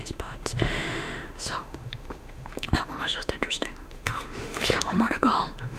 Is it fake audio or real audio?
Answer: fake